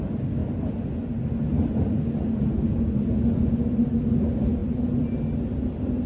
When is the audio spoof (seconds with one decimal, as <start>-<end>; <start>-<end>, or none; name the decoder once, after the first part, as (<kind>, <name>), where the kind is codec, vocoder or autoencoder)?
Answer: none